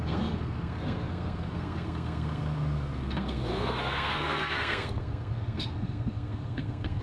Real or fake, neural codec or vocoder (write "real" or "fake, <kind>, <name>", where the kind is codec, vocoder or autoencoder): fake, codec, SNAC